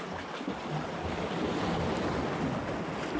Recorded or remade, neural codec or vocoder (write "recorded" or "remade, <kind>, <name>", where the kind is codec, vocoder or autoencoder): recorded